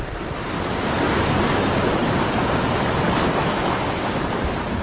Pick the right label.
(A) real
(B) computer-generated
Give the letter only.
A